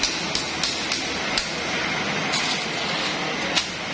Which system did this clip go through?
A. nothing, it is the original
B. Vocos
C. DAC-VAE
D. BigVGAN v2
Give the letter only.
A